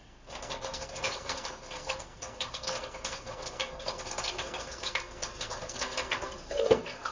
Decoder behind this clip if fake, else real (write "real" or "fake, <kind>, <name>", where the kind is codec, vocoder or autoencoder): fake, codec, SNAC